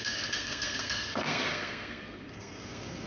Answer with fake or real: fake